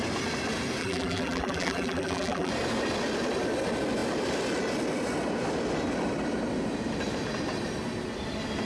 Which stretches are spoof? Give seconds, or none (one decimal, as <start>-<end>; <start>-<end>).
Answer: 0.8-2.5